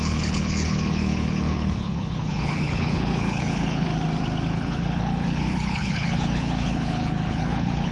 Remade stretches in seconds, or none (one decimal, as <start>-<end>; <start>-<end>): 0.0-3.9; 4.5-7.9